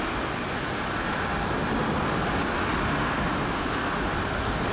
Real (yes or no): yes